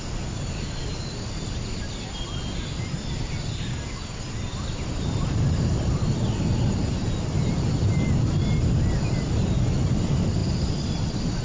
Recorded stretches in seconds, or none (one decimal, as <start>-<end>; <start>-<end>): 0.0-11.4